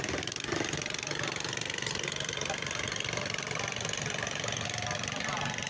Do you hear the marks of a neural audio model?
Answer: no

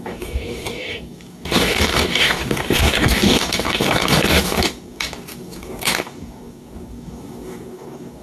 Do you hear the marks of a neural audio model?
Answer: yes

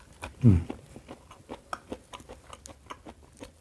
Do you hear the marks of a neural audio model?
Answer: no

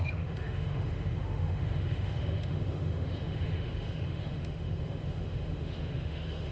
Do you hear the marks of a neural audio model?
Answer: yes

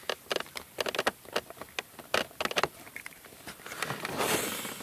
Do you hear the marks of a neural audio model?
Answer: no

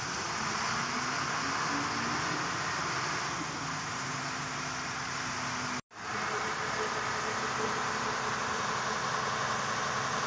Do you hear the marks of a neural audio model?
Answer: no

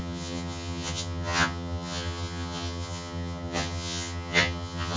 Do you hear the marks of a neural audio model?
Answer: yes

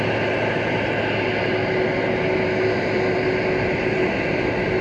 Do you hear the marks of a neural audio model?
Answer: no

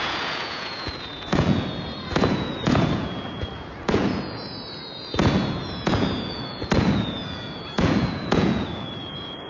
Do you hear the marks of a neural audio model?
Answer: yes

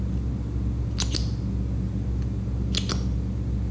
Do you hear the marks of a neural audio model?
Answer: no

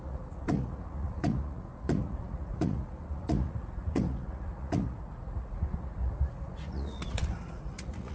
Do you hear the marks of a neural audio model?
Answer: yes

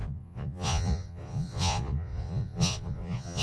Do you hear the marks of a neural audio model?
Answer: yes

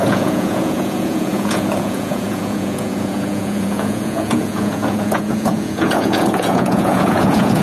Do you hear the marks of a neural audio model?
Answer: yes